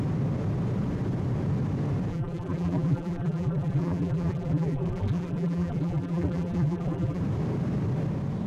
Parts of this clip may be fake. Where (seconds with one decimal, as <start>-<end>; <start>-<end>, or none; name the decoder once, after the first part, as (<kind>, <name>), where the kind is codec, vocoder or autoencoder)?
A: 2.1-7.2 (vocoder, BigVGAN v2)